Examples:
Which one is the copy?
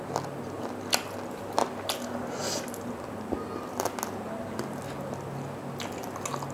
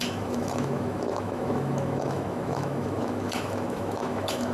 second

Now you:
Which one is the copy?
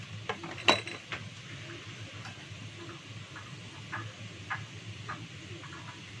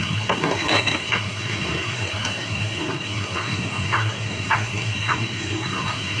second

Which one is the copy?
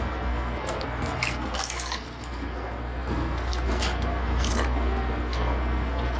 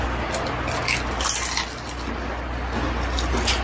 first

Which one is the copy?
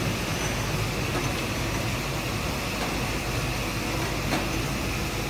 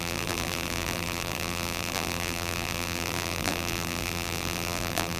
second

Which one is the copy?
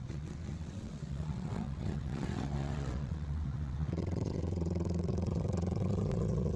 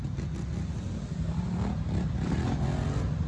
first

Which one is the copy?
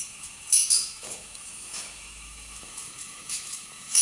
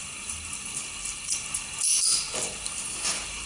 first